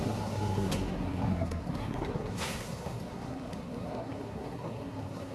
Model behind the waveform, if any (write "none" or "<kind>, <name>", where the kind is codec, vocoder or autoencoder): codec, SNAC